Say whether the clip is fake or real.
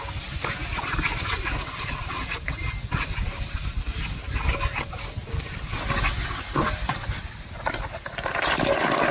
real